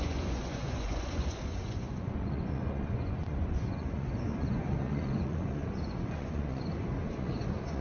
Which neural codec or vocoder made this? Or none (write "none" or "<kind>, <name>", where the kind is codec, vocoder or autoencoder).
vocoder, Vocos